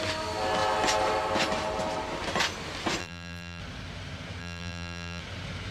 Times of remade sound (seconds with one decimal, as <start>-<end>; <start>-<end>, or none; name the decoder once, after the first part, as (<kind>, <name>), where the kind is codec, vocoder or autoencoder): 3.0-3.6 (vocoder, BigVGAN v2); 4.4-5.2